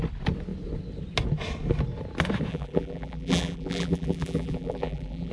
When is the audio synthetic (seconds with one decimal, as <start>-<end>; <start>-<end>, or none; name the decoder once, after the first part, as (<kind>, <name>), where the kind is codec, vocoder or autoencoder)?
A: 2.5-5.3 (vocoder, BigVGAN v2)